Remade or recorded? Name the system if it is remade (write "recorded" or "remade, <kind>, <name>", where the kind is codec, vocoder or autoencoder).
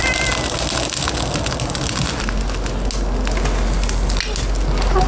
recorded